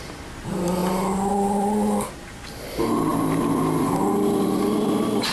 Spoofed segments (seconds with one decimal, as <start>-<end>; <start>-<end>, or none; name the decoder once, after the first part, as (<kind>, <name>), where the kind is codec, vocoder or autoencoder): none